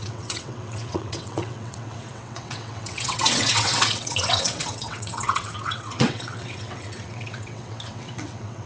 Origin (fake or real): fake